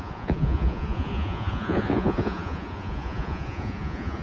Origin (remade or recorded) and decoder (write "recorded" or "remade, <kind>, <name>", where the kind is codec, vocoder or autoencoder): remade, vocoder, Vocos